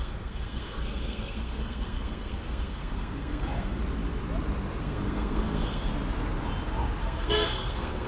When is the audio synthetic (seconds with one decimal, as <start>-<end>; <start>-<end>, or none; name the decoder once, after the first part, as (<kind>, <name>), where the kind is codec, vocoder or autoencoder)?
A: 0.0-3.8 (codec, SNAC); 4.8-5.9; 7.0-8.1